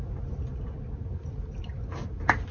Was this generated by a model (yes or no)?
no